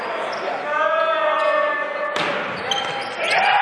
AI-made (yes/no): no